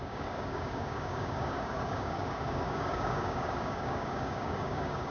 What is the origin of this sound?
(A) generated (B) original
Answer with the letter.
A